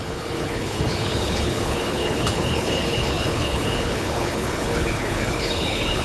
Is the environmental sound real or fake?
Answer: fake